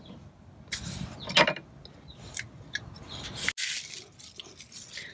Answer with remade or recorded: recorded